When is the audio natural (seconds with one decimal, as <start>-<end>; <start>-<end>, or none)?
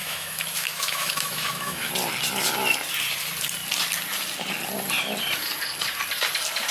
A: 1.9-6.7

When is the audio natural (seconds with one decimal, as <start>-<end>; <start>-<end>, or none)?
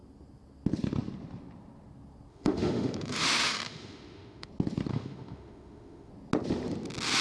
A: 0.0-2.3; 4.5-4.9; 6.1-7.2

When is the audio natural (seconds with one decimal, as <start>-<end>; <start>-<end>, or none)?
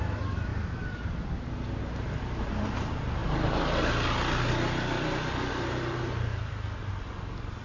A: 0.0-7.6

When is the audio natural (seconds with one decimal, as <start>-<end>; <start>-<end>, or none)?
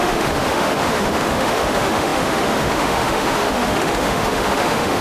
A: none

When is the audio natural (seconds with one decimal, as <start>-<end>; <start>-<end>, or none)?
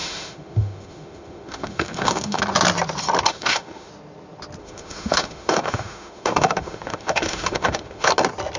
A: 2.4-3.3; 3.9-4.6; 8.1-8.6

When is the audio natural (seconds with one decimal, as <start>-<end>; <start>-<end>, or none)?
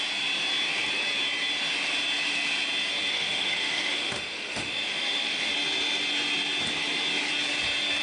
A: 0.0-3.1; 5.5-8.0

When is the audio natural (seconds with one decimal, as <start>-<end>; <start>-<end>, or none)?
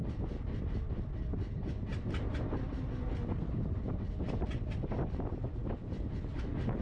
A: 0.0-6.8